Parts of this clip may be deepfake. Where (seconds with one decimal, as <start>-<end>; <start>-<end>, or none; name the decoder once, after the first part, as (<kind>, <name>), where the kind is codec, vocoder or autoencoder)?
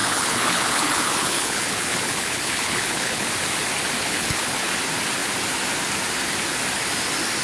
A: 0.0-3.3 (codec, HILCodec); 4.0-4.7